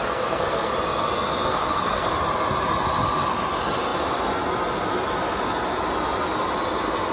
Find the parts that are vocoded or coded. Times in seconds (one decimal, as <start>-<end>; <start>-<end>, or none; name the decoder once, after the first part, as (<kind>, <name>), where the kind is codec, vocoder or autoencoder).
0.0-0.7 (codec, SNAC); 1.5-2.1